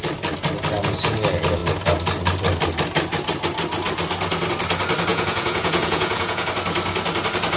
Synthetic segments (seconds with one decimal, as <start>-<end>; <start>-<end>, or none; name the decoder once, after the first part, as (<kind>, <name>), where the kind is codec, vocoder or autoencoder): 5.1-6.5 (vocoder, Vocos)